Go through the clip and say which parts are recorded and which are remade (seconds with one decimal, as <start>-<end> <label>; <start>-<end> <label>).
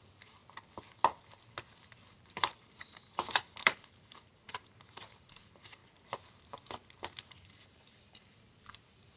0.0-0.4 remade; 0.4-2.0 recorded; 2.0-5.8 remade; 5.8-7.3 recorded; 7.3-9.2 remade